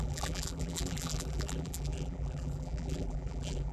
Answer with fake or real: fake